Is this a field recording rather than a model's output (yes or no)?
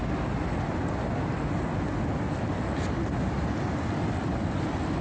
yes